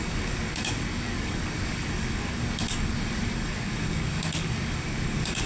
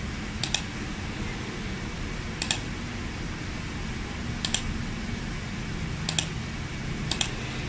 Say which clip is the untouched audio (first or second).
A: second